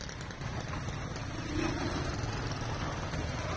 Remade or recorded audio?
recorded